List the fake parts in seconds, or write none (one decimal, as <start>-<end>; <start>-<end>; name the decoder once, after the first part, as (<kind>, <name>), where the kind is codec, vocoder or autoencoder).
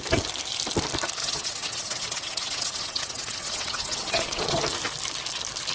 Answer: 1.2-4.6 (vocoder, WaveNeXt)